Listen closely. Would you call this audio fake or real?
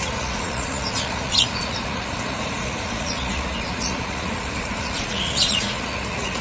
fake